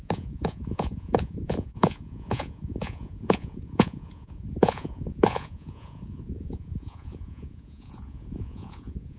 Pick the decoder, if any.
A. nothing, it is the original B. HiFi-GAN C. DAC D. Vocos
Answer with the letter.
D